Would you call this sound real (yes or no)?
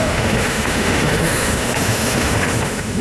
no